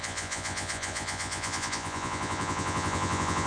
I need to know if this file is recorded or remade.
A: remade